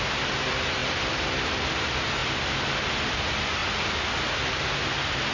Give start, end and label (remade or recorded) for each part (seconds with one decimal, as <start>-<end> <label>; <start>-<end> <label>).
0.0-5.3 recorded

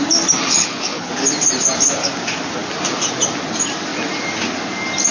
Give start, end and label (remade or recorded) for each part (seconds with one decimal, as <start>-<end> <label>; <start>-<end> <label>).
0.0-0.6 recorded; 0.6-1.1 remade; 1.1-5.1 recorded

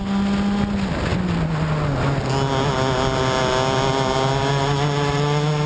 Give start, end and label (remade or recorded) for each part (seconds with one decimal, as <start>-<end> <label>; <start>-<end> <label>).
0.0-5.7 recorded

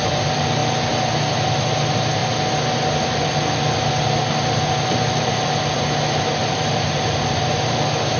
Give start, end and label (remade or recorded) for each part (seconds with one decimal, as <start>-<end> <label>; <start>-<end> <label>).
0.0-6.4 recorded; 6.4-7.5 remade; 7.5-8.2 recorded

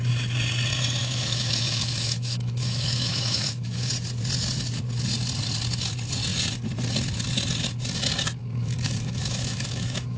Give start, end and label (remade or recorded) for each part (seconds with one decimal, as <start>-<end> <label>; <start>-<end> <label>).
0.0-1.0 recorded; 1.0-3.9 remade; 3.9-8.6 recorded; 8.6-10.2 remade

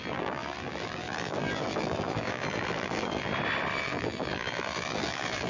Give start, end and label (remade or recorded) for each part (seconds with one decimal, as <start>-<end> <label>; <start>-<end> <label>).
0.0-3.3 remade; 3.3-3.8 recorded; 3.8-5.5 remade

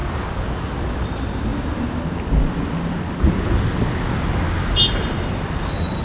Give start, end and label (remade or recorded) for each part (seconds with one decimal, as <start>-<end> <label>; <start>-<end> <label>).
0.0-6.0 recorded

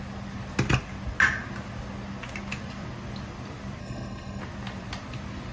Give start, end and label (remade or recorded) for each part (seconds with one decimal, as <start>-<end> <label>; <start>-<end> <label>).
0.0-3.8 recorded; 3.8-4.4 remade; 4.4-5.5 recorded